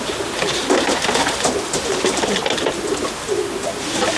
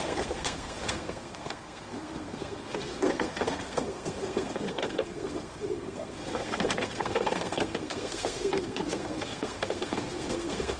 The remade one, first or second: second